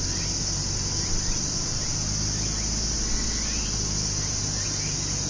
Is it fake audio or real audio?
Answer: real